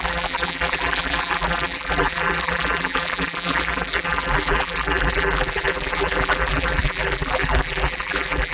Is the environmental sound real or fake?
fake